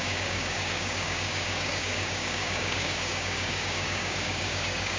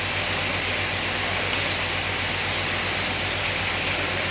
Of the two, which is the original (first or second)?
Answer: second